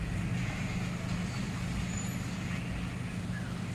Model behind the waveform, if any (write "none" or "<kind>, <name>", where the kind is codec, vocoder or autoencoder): none